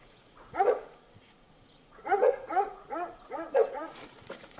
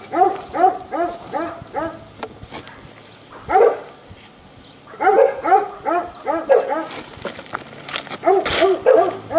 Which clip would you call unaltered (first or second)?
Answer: second